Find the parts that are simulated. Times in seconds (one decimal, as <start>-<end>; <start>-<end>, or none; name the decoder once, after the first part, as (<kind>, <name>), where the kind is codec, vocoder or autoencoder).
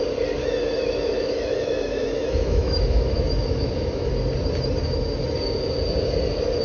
0.4-4.1 (autoencoder, DAC-VAE)